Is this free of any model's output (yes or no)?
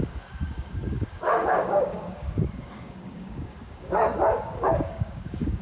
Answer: no